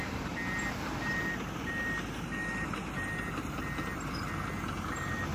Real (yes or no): yes